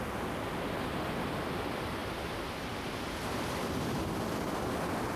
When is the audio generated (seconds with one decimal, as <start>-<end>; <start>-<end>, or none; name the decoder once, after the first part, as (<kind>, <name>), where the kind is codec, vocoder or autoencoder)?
2.0-4.3 (vocoder, BigVGAN v2)